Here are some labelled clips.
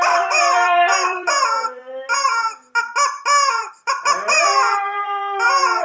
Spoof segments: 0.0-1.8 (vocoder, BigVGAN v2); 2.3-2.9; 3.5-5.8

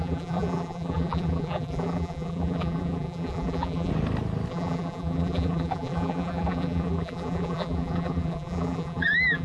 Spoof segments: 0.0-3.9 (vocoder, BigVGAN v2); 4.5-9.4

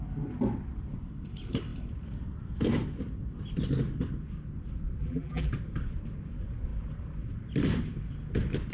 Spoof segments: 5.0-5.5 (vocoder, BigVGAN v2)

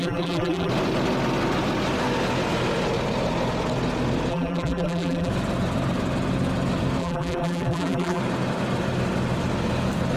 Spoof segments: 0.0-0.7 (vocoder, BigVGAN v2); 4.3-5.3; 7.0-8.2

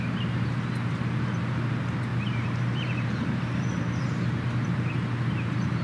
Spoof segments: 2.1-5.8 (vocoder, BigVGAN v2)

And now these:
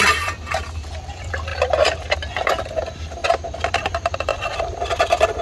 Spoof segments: 0.0-1.5 (vocoder, BigVGAN v2); 2.3-3.2; 3.7-5.4

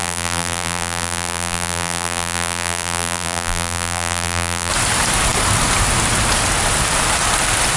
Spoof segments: 0.0-4.7 (vocoder, BigVGAN v2)

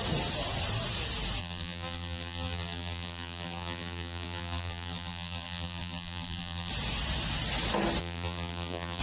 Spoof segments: 1.4-6.7 (vocoder, BigVGAN v2); 8.0-9.0